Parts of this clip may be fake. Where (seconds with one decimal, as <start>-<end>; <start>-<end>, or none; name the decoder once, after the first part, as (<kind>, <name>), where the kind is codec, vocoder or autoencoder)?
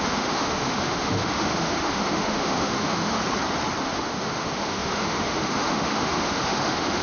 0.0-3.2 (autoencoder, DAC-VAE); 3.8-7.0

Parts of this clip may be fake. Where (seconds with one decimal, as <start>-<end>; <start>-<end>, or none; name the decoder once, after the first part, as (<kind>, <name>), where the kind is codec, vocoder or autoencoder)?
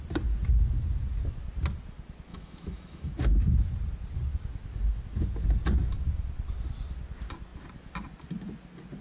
2.3-3.1 (autoencoder, DAC-VAE)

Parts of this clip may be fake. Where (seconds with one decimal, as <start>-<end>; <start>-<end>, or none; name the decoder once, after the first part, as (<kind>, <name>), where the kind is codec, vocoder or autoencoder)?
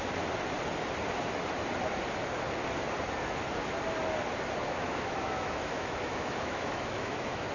4.6-7.5 (autoencoder, DAC-VAE)